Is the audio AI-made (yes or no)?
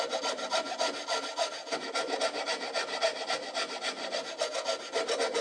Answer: no